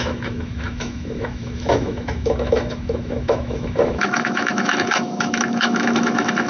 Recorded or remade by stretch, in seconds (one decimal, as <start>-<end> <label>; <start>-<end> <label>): 0.0-6.5 remade

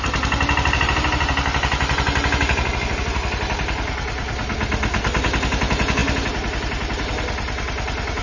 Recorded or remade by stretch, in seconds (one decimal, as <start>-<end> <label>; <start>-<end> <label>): 0.0-8.2 recorded